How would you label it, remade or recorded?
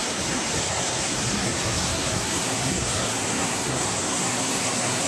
remade